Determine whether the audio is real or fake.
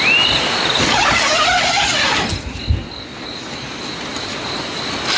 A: real